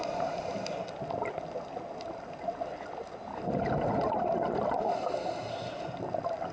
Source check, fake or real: real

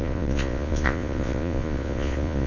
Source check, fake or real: fake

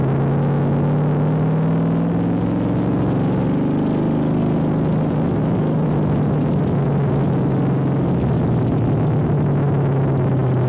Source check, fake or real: real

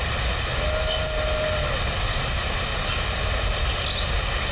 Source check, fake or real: real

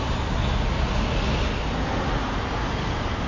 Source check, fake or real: real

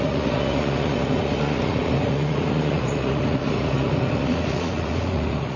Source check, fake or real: fake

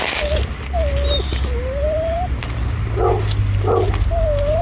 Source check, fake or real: real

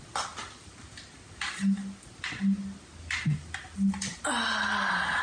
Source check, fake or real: real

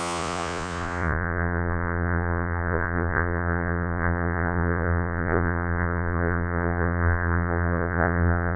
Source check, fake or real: fake